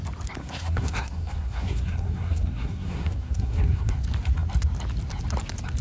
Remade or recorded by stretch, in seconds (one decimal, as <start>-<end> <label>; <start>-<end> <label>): 0.0-0.4 recorded; 0.4-3.9 remade; 3.9-5.8 recorded